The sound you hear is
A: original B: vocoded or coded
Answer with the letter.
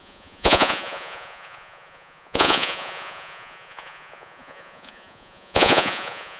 B